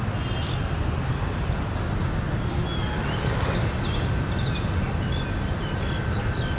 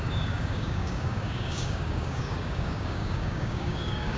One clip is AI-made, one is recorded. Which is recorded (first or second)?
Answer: first